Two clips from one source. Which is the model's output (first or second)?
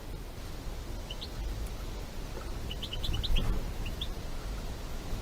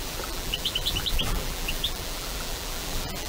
second